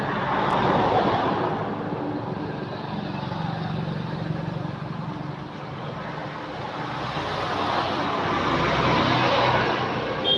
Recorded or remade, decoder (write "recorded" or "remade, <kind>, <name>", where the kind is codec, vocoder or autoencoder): recorded